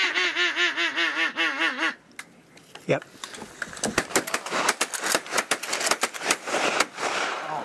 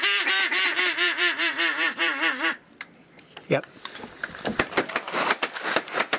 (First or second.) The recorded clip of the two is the first